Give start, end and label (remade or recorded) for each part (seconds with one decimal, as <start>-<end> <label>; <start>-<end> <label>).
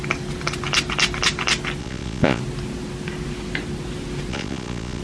0.0-1.8 recorded; 1.8-2.4 remade; 2.4-4.3 recorded; 4.3-5.0 remade